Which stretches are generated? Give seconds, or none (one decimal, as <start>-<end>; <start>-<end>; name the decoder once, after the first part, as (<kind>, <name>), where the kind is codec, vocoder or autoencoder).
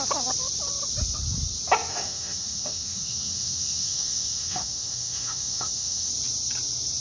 1.9-6.1 (autoencoder, DAC-VAE)